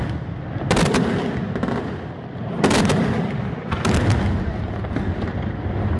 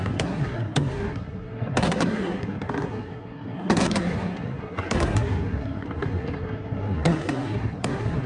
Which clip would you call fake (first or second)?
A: second